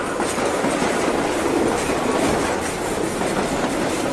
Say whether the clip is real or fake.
real